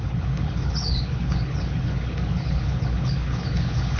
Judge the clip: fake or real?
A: fake